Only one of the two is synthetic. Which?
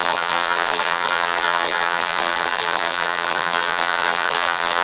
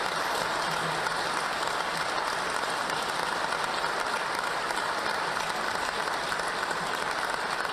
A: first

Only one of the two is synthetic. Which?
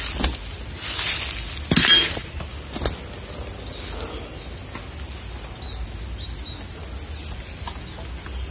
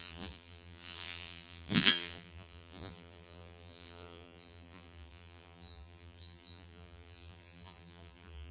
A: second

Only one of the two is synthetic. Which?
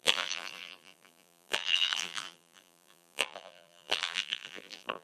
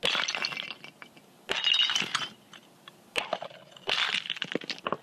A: first